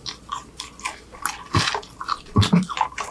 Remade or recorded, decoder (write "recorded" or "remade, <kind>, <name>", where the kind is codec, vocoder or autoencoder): recorded